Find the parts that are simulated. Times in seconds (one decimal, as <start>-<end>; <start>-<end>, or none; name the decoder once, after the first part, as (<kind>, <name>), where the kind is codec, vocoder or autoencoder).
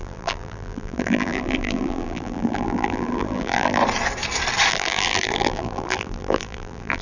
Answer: 0.0-3.8 (vocoder, BigVGAN v2); 4.7-7.0